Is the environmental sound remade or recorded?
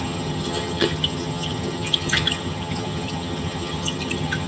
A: remade